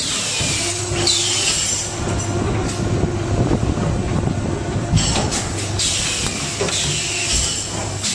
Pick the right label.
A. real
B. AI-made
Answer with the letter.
A